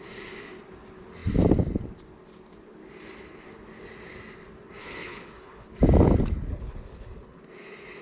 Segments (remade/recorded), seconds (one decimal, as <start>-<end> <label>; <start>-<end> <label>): 0.0-4.8 recorded; 4.8-5.7 remade; 5.7-6.5 recorded; 6.5-7.4 remade; 7.4-8.0 recorded